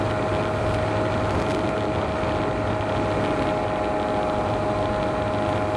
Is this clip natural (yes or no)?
yes